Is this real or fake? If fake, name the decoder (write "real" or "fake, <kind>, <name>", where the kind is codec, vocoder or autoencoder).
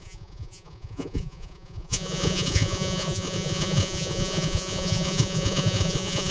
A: fake, vocoder, Vocos